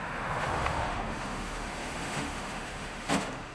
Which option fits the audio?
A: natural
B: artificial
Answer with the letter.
B